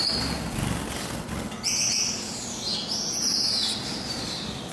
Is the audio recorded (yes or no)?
yes